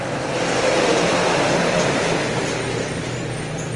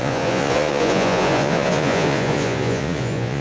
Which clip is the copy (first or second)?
second